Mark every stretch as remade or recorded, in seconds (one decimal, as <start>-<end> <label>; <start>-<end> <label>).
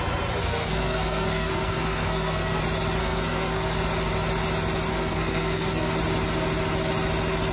0.0-0.4 recorded; 0.4-2.6 remade; 2.6-3.0 recorded; 3.0-3.7 remade; 3.7-4.9 recorded; 4.9-5.9 remade; 5.9-7.5 recorded